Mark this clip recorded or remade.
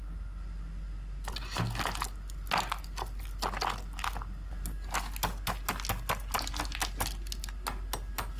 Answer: recorded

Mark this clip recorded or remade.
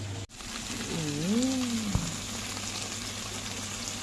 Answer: recorded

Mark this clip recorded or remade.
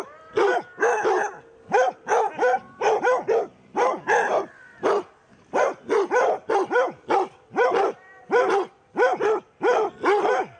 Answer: remade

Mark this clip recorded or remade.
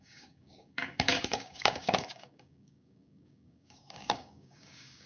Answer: remade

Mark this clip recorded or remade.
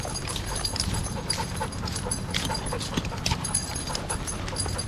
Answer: recorded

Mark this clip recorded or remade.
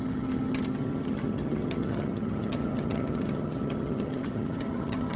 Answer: remade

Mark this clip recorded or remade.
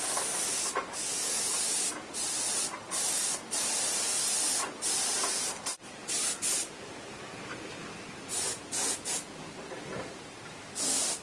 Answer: recorded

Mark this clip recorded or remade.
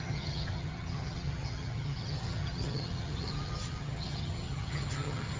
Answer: remade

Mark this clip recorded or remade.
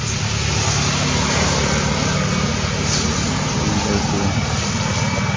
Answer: recorded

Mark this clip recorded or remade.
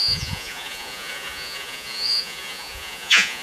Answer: remade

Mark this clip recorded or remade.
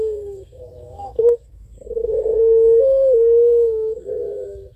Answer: remade